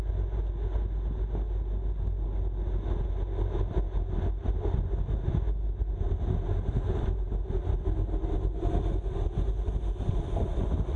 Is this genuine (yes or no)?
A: yes